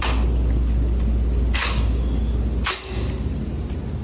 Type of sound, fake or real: real